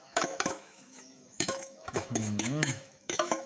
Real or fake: fake